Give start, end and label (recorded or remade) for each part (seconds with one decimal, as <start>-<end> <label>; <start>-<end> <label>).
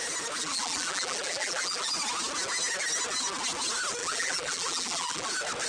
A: 0.0-0.4 recorded; 0.4-1.9 remade; 1.9-4.0 recorded; 4.0-5.3 remade; 5.3-5.7 recorded